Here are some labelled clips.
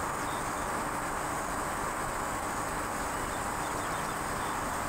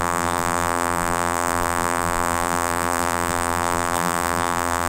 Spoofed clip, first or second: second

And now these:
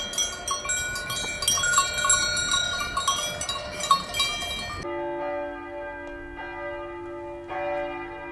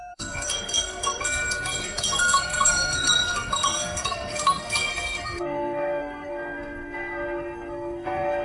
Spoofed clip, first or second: second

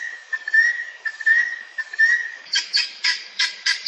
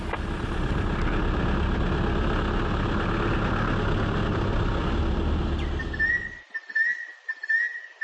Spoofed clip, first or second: first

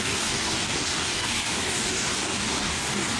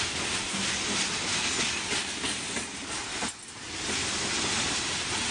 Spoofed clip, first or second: first